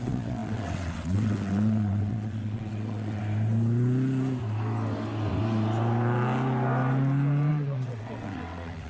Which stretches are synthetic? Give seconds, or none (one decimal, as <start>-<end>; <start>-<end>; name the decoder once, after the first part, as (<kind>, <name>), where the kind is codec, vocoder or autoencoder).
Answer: 0.0-3.2 (vocoder, WaveNeXt); 7.5-8.9